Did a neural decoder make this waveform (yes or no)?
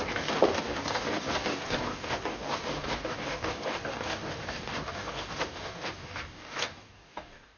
yes